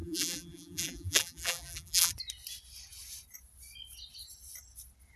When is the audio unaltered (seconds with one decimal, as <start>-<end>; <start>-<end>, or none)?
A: 2.1-5.2